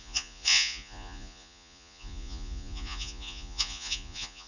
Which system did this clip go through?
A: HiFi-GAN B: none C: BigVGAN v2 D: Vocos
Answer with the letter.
D